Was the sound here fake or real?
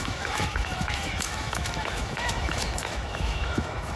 fake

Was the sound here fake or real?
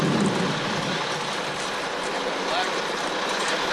real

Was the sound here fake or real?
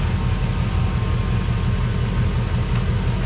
real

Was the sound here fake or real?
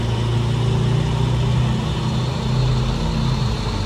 real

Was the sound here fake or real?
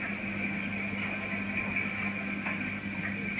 real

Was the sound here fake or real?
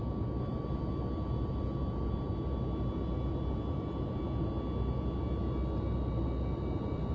real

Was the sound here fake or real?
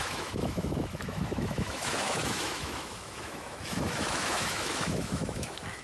fake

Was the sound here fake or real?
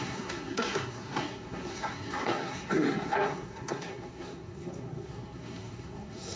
fake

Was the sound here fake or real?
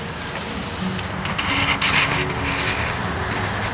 real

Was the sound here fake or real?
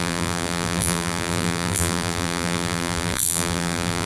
fake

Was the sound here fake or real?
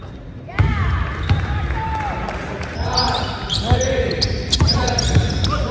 real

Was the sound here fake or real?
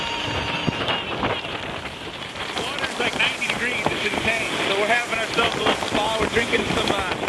fake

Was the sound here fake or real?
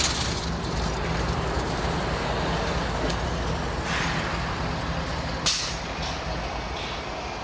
real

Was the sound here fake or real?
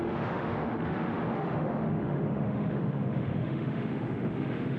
fake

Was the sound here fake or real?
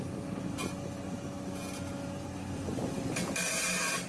real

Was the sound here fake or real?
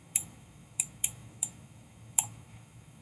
fake